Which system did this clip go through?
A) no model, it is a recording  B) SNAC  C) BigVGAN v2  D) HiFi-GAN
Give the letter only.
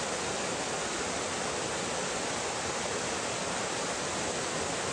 A